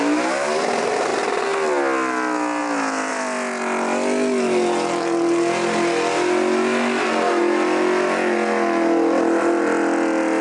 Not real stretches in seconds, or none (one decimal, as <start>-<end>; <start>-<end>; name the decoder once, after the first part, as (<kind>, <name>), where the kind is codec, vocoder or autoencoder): none